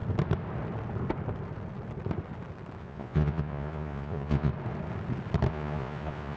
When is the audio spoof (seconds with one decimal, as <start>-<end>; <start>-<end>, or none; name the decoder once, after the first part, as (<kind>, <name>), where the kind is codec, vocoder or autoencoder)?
2.8-4.5 (vocoder, Vocos); 5.5-6.4